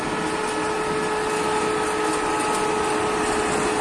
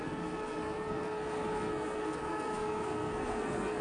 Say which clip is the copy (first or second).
second